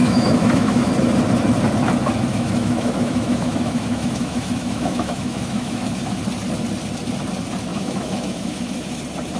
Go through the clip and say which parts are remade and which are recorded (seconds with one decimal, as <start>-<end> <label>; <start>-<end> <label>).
0.0-0.9 remade; 0.9-2.3 recorded; 2.3-6.2 remade; 6.2-7.7 recorded; 7.7-9.0 remade; 9.0-9.4 recorded